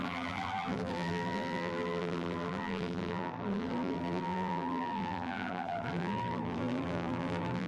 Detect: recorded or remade remade